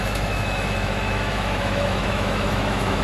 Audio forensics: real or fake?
fake